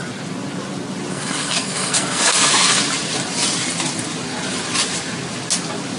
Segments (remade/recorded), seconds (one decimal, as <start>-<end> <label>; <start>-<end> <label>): 0.0-1.1 recorded; 1.1-2.8 remade; 2.8-6.0 recorded